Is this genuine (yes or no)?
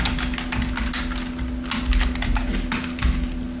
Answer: yes